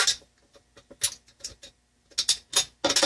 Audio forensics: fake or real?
real